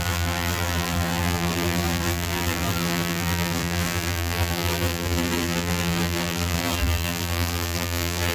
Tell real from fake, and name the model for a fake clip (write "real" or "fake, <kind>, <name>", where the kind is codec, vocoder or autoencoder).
fake, vocoder, BigVGAN v2